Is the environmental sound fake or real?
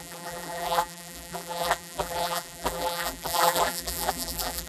fake